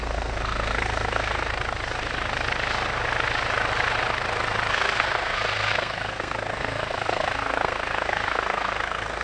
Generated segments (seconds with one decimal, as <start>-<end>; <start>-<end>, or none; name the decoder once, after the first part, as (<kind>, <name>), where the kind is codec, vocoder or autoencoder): 0.0-1.5 (codec, SNAC); 4.7-9.2